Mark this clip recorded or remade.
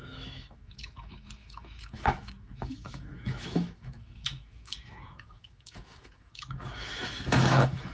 remade